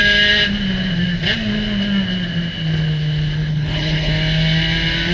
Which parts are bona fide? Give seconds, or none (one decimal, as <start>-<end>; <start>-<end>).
0.0-3.5; 4.1-5.1